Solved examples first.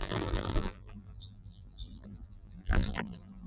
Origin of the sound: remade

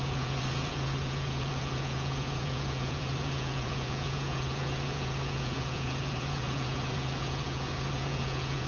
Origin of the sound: remade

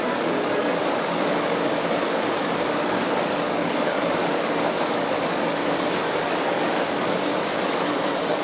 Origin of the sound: remade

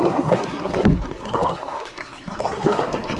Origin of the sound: remade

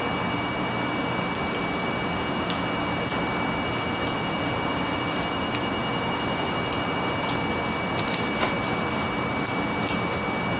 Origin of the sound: recorded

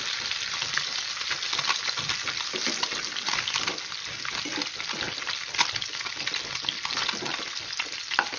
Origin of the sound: recorded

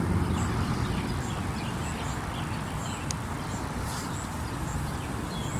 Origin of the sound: recorded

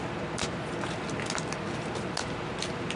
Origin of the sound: recorded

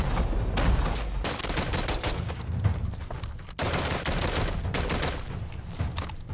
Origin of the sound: recorded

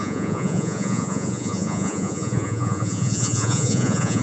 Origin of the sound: remade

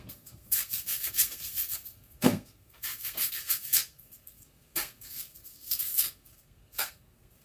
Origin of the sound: remade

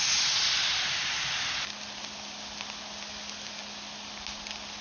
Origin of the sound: recorded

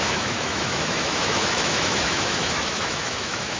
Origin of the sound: remade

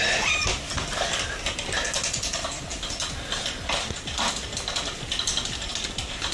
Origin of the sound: recorded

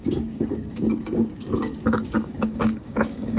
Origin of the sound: remade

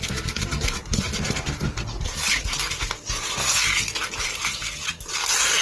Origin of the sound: recorded